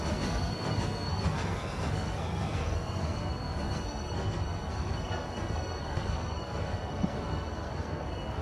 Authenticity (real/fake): fake